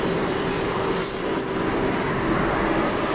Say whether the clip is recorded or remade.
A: remade